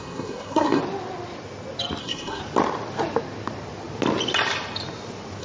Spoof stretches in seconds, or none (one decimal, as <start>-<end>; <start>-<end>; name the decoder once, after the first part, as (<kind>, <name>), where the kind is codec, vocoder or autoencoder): 0.0-0.8 (codec, SNAC); 2.0-2.4